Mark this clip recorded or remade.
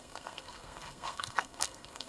remade